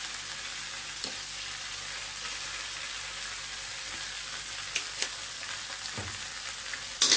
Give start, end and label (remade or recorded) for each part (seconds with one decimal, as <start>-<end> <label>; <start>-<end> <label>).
0.0-7.2 recorded